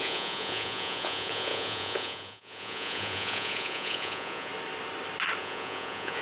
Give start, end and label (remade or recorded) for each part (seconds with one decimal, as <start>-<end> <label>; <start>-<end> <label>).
0.0-4.5 remade; 4.5-5.4 recorded; 5.4-6.2 remade

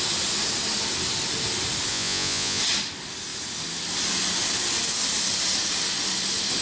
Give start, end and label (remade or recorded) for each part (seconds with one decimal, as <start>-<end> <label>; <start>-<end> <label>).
0.0-1.9 recorded; 1.9-2.6 remade; 2.6-6.6 recorded

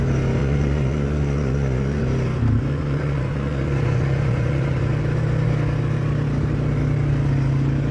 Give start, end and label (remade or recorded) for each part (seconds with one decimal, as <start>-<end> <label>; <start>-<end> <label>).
0.0-0.4 recorded; 0.4-2.0 remade; 2.0-2.7 recorded; 2.7-4.9 remade; 4.9-7.9 recorded

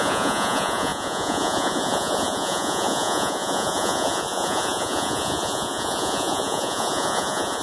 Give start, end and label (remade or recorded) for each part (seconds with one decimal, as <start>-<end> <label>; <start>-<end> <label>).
0.0-7.6 remade

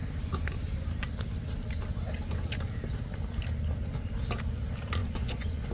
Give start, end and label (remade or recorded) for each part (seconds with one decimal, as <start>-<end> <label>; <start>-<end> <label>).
0.0-5.0 recorded; 5.0-5.7 remade